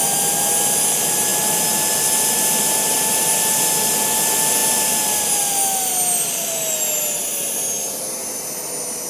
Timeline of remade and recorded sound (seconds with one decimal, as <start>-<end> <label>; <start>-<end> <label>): 0.0-9.1 recorded